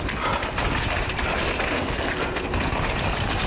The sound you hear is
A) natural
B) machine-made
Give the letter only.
A